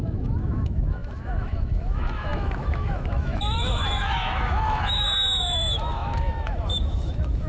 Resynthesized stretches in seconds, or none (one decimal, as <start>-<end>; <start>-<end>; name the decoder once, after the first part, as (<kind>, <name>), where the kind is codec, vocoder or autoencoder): 0.0-7.5 (autoencoder, DAC-VAE)